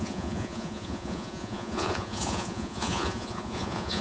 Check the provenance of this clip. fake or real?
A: fake